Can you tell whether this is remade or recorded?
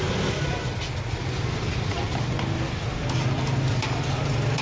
recorded